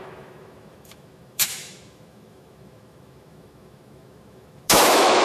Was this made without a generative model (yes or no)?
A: no